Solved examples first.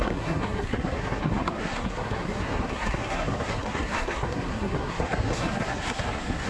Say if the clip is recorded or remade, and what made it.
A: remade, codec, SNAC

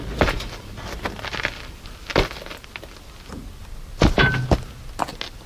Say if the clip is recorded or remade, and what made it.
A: recorded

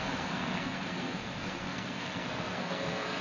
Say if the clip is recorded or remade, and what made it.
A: remade, codec, SNAC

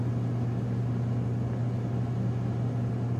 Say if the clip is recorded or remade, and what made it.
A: recorded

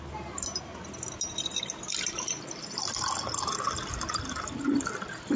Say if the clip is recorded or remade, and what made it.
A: recorded